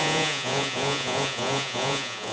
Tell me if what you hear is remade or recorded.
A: remade